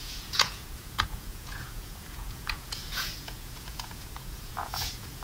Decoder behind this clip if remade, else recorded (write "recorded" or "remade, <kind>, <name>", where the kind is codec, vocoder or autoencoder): remade, vocoder, Vocos